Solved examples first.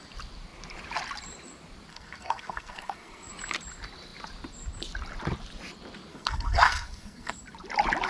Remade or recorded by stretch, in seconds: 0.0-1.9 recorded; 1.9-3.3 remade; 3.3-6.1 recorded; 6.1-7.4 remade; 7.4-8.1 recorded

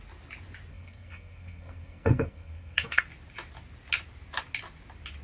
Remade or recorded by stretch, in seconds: 0.0-0.7 recorded; 0.7-3.0 remade; 3.0-5.2 recorded

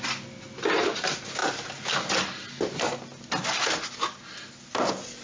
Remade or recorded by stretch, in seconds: 0.0-5.2 recorded

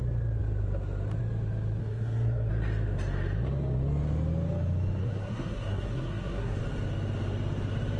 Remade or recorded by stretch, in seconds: 0.0-1.8 recorded; 1.8-2.5 remade; 2.5-5.0 recorded; 5.0-6.6 remade; 6.6-8.0 recorded

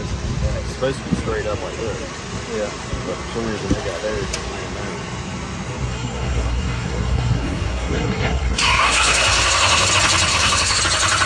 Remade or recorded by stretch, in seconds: 0.0-5.9 recorded; 5.9-9.9 remade; 9.9-10.3 recorded; 10.3-10.8 remade; 10.8-11.3 recorded